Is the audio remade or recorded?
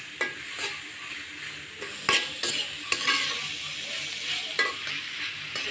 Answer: recorded